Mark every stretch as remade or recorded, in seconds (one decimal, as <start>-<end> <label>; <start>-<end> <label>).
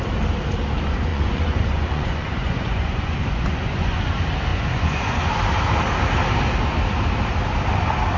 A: 0.0-1.1 recorded; 1.1-4.0 remade; 4.0-4.5 recorded; 4.5-5.2 remade; 5.2-8.2 recorded